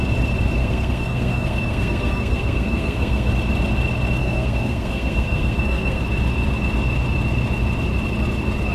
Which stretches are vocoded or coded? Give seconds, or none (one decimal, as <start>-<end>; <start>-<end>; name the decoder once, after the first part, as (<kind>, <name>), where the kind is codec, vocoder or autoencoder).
0.6-3.3 (codec, SNAC); 4.2-6.0